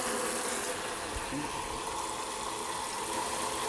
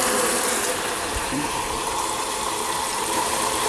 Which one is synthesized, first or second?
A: second